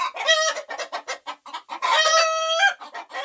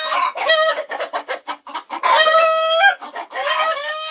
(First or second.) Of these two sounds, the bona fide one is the first